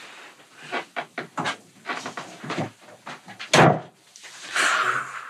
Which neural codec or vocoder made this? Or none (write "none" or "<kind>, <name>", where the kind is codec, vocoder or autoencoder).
none